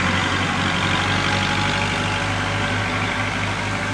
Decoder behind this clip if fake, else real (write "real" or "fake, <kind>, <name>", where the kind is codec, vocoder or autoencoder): real